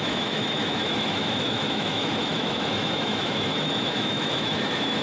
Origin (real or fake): fake